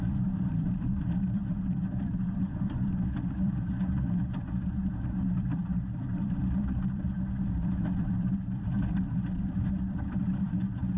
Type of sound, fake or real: fake